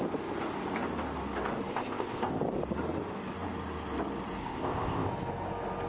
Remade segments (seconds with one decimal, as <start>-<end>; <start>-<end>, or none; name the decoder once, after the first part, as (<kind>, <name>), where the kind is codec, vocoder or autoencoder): 1.7-2.4 (codec, ZipCodec); 4.4-5.1